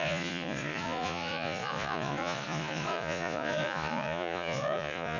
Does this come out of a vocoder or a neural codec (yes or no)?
yes